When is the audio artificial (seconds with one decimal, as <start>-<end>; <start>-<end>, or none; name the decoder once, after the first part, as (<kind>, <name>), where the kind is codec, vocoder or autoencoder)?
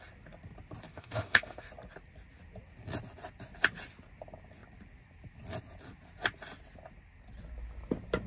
0.9-1.7 (autoencoder, DAC-VAE)